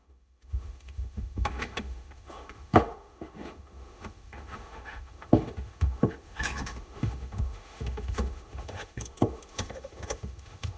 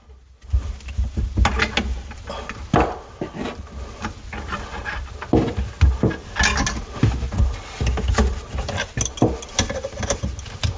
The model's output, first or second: first